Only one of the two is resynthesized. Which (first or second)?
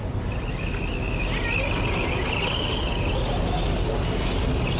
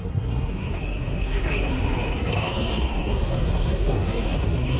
second